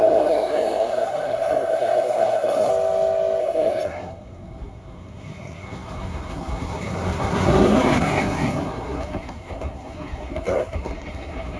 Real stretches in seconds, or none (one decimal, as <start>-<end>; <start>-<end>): 2.7-3.4